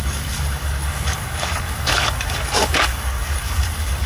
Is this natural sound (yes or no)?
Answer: no